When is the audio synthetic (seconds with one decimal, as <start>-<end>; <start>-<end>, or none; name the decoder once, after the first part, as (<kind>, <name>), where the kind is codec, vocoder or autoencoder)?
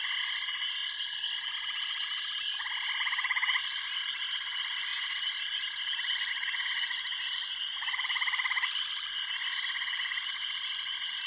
0.8-1.3 (vocoder, BigVGAN v2)